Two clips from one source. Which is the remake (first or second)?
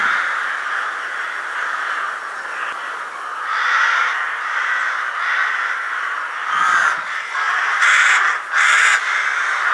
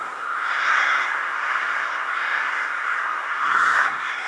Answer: second